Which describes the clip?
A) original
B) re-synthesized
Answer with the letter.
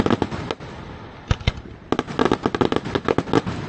A